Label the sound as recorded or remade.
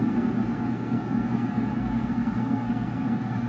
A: remade